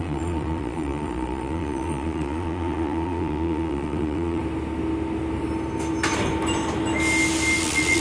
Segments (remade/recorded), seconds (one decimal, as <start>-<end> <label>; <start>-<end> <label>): 0.0-4.4 remade; 4.4-7.6 recorded; 7.6-8.0 remade